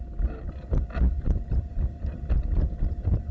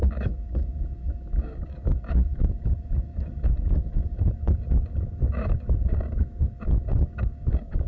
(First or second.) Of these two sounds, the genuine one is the first